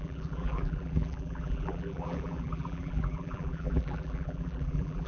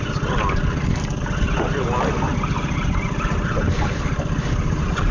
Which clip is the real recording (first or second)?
second